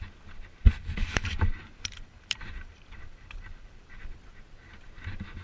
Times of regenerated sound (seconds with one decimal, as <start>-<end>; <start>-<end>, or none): 1.0-4.0

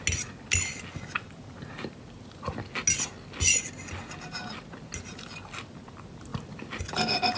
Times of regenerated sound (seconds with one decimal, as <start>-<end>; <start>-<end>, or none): none